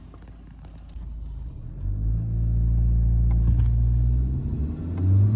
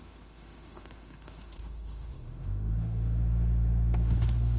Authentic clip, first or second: first